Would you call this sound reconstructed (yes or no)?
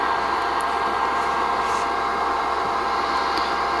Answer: no